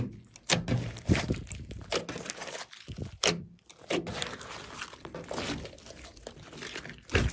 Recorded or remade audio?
recorded